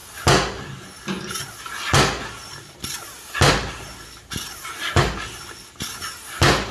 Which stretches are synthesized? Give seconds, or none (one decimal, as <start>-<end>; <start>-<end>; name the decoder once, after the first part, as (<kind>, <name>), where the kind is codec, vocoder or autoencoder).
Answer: none